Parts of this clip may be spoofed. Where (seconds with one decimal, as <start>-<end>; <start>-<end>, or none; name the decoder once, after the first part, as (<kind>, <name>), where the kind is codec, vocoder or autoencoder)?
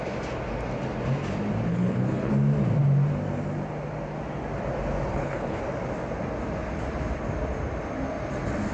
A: 1.7-2.3 (codec, HILCodec); 5.1-5.6